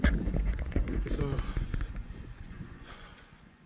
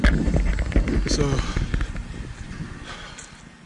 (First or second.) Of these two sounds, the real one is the second